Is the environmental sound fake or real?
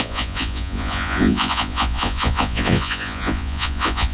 fake